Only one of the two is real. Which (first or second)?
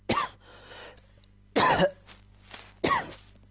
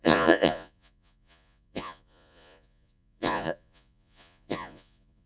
first